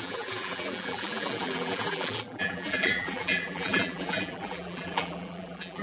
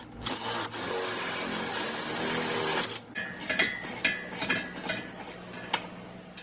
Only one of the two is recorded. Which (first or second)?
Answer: second